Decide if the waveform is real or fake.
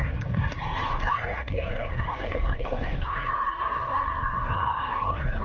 fake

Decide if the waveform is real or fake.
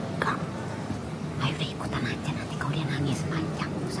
real